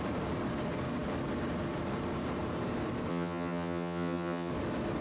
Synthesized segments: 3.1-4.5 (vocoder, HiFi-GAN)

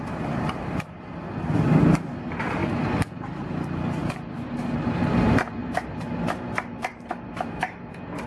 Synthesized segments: 2.6-3.5 (vocoder, BigVGAN v2); 4.0-5.1; 5.6-7.6

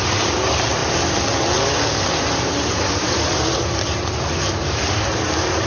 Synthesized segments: 0.0-0.8 (vocoder, BigVGAN v2); 2.0-5.7